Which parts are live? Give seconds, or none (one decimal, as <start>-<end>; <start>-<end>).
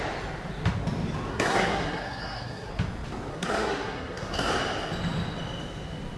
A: 0.0-1.3; 2.7-3.3; 4.5-6.2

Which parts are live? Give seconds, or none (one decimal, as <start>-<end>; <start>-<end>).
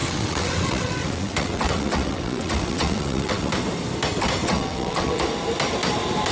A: 3.5-4.4; 5.2-6.3